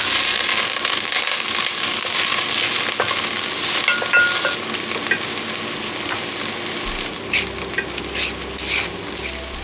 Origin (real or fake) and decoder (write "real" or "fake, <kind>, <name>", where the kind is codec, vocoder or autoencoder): real